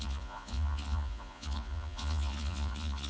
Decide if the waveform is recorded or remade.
remade